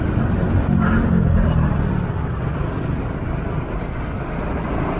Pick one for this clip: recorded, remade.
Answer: recorded